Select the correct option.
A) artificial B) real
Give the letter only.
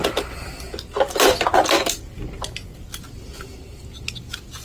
B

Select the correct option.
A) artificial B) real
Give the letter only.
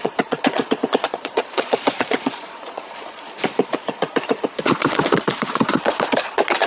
A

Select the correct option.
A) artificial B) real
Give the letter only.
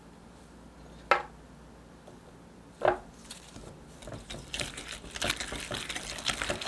B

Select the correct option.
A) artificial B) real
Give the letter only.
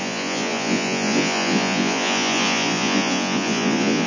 A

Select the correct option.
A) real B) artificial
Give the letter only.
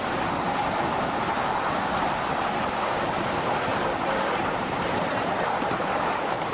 A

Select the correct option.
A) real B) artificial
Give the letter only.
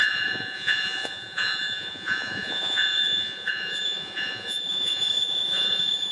B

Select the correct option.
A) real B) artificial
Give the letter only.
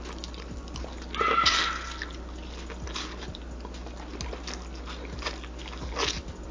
A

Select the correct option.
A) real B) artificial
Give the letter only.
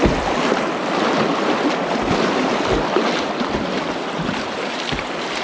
A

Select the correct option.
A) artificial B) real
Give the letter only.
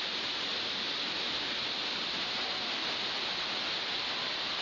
B